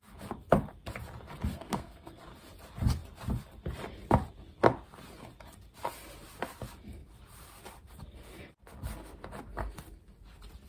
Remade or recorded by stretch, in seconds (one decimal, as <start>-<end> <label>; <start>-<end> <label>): 0.0-1.5 recorded; 1.5-2.2 remade; 2.2-10.7 recorded